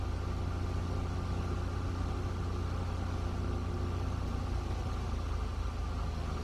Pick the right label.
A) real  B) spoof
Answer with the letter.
A